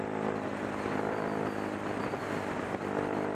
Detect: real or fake real